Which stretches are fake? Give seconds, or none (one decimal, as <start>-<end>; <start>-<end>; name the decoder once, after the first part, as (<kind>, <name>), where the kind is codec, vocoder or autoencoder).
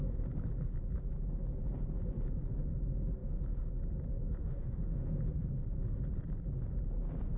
4.4-5.2 (autoencoder, DAC-VAE)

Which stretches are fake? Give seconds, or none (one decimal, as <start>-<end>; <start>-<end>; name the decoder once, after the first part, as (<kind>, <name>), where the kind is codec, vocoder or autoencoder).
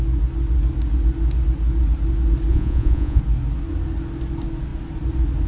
2.5-3.2 (vocoder, Vocos)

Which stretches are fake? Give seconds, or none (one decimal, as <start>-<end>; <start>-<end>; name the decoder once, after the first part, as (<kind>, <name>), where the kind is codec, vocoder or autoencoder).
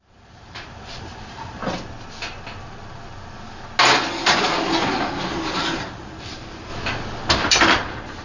0.0-1.6 (vocoder, BigVGAN v2); 5.3-6.7; 7.3-8.2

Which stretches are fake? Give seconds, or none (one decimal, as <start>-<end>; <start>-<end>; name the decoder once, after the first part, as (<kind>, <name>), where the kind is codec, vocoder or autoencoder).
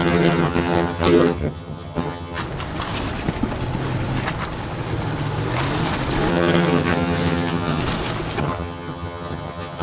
0.0-2.4 (vocoder, HiFi-GAN); 6.3-7.8; 8.4-9.8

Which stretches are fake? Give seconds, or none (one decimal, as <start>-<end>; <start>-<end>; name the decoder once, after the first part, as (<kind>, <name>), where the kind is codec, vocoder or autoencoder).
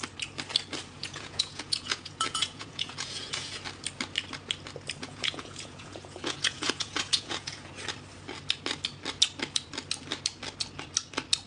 1.0-3.6 (vocoder, Vocos); 5.0-7.7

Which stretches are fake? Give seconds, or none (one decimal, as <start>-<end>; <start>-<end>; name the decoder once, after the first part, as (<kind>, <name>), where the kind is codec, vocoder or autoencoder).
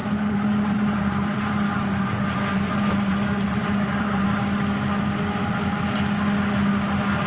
0.0-4.4 (vocoder, BigVGAN v2)